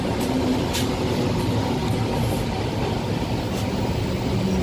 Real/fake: real